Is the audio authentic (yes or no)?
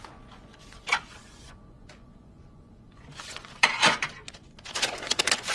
no